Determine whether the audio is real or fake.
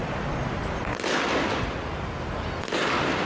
real